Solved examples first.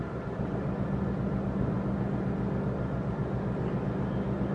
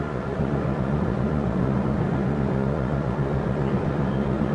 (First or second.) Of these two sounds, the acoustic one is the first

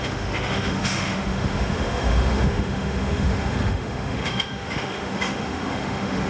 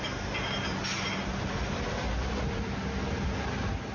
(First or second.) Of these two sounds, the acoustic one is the second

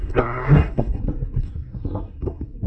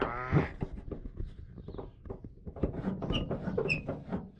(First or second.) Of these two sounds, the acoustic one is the second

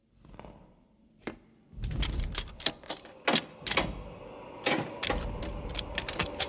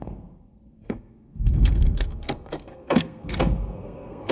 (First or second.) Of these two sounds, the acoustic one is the first